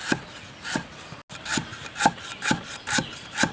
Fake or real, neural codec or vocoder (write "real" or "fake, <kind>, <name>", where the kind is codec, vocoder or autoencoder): real